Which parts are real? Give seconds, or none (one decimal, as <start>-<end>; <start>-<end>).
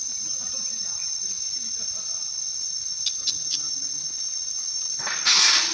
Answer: 0.0-5.7